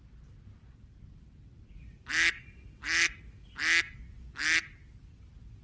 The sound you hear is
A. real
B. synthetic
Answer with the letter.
A